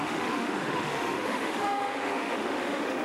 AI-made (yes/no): yes